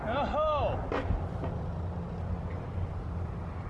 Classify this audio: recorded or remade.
recorded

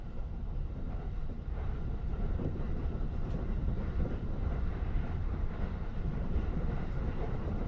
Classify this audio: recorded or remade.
remade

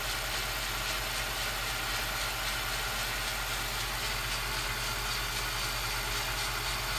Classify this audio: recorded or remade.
recorded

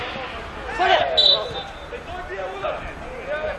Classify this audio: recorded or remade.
recorded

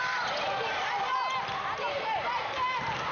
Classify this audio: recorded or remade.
recorded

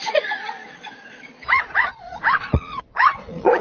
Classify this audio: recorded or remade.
remade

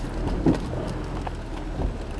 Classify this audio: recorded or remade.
recorded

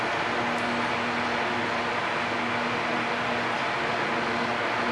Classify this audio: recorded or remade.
recorded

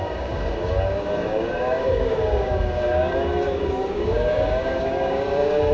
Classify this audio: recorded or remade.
remade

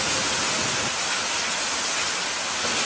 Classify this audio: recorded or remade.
recorded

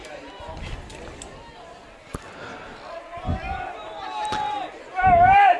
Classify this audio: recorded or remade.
recorded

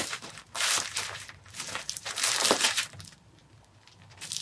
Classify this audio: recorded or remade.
remade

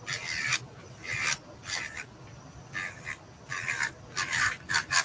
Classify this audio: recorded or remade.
remade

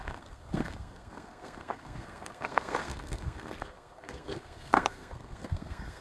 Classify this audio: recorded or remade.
remade